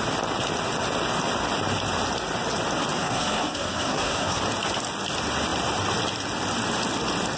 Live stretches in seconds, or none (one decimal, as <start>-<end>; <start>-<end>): 0.0-3.0; 4.4-7.4